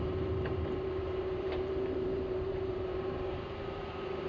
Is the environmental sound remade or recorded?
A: remade